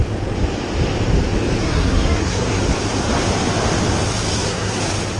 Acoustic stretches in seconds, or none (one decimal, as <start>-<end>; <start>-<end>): 0.0-1.6; 2.6-4.3; 4.8-5.2